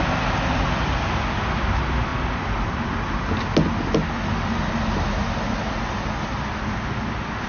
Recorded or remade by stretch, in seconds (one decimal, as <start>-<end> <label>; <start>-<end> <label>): 0.0-7.5 recorded